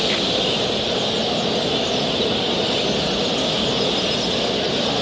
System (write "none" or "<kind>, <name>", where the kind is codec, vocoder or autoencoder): none